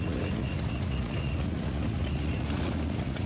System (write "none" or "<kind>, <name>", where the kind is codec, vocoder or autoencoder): vocoder, Vocos